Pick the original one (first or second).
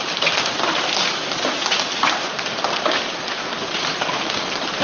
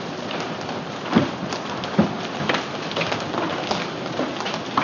second